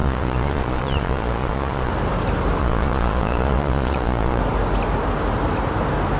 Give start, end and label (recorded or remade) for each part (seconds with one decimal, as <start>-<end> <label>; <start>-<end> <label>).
0.0-1.9 remade; 1.9-2.6 recorded; 2.6-4.4 remade; 4.4-6.2 recorded